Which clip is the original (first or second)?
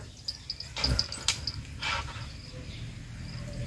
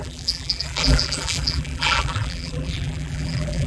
first